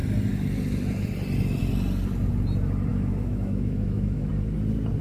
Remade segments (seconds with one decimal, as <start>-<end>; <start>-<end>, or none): 2.9-4.3